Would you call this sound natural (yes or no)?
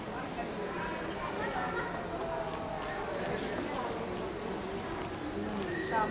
yes